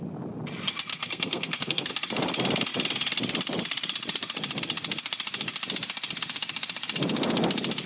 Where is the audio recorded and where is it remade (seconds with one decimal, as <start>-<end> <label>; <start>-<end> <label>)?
0.0-0.9 recorded; 0.9-1.9 remade; 1.9-7.9 recorded